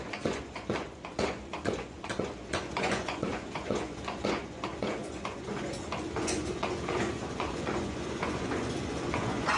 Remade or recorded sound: remade